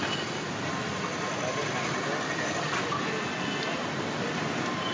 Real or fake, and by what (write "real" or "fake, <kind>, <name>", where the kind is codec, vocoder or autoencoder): real